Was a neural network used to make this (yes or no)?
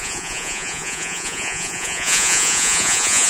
yes